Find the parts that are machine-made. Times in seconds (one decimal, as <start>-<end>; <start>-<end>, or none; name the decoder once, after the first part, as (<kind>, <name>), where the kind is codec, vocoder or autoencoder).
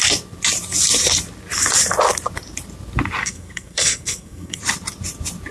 3.2-4.6 (codec, SNAC)